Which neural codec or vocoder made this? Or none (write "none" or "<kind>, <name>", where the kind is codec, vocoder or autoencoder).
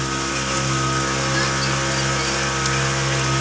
none